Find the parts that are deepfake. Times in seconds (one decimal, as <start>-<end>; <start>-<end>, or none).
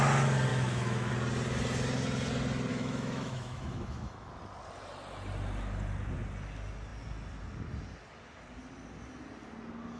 0.5-1.1; 2.7-4.3